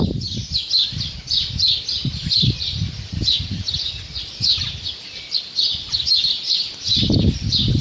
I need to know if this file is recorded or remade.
recorded